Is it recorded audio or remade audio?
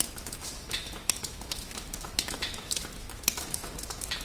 remade